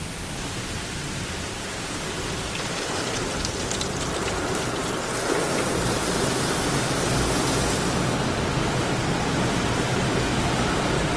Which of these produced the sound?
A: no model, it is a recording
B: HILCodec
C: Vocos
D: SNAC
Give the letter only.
A